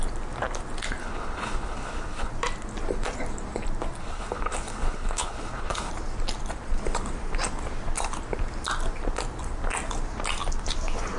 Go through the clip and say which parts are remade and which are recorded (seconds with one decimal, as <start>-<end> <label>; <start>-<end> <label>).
0.0-1.0 recorded; 1.0-2.3 remade; 2.3-4.0 recorded; 4.0-5.9 remade; 5.9-11.2 recorded